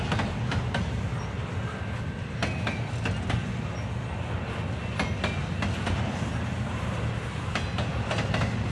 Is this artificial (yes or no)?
no